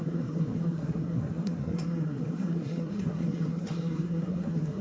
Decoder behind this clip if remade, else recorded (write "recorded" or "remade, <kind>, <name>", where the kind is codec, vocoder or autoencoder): remade, codec, SNAC